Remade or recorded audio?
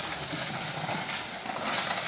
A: recorded